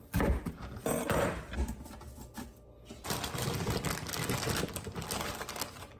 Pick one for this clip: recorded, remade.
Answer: recorded